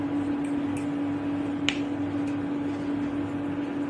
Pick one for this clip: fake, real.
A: real